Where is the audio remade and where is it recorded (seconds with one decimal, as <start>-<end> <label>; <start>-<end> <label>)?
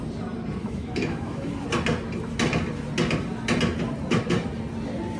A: 0.0-0.6 recorded; 0.6-1.5 remade; 1.5-5.2 recorded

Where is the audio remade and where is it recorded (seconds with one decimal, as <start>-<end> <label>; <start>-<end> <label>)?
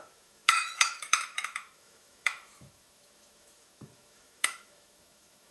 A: 0.0-5.5 remade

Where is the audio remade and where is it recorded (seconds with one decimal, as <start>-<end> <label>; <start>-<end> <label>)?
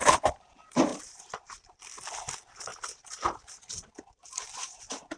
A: 0.0-5.2 remade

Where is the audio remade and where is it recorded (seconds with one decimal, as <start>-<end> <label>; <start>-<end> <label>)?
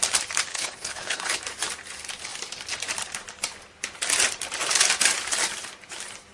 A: 0.0-0.5 recorded; 0.5-1.4 remade; 1.4-6.3 recorded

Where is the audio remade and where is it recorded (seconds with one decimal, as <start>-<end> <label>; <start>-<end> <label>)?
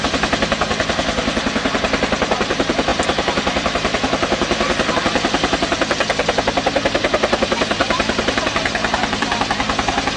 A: 0.0-7.8 remade; 7.8-8.4 recorded; 8.4-10.2 remade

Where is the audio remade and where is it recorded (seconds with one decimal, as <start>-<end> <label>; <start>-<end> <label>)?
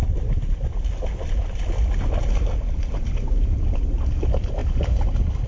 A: 0.0-5.5 recorded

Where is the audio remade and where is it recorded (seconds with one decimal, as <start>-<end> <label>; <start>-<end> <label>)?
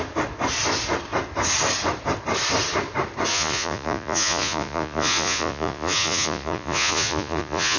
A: 0.0-3.3 recorded; 3.3-7.8 remade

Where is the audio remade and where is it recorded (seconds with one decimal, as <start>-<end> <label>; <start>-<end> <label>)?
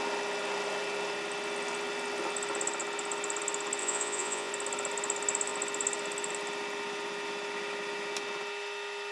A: 0.0-3.8 recorded; 3.8-4.5 remade; 4.5-9.1 recorded